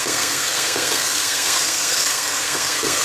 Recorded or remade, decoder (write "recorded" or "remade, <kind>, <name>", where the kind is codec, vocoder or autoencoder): remade, codec, SNAC